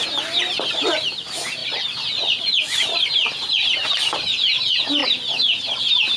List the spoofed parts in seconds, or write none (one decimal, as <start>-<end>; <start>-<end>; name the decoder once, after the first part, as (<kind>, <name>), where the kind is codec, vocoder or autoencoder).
none